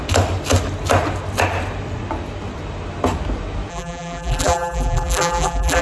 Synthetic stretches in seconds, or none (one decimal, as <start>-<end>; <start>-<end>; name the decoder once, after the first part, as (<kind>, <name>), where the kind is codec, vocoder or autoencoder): 3.7-5.8 (vocoder, BigVGAN v2)